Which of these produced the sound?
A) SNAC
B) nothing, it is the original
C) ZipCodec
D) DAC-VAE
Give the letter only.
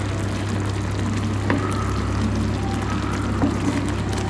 B